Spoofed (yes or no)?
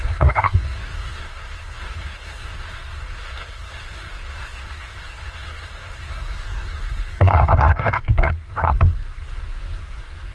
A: yes